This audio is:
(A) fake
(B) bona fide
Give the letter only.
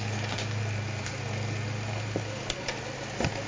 B